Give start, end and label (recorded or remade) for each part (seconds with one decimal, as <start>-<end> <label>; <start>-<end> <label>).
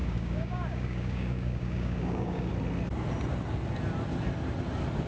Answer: 0.0-2.5 remade; 2.5-5.1 recorded